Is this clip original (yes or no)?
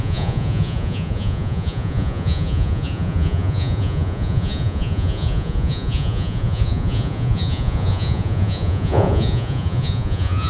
no